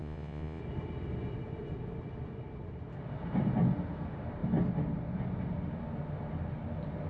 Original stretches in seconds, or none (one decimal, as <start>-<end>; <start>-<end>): 0.6-7.1